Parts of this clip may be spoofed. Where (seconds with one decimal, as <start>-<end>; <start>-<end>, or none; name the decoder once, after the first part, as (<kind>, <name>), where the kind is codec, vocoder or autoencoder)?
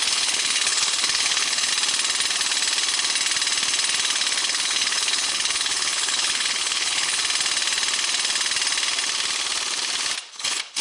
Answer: 0.0-1.7 (codec, HILCodec); 4.4-7.2; 10.3-10.8